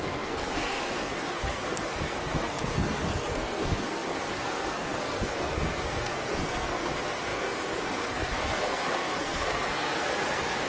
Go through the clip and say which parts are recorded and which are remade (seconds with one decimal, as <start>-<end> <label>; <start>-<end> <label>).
0.0-10.7 remade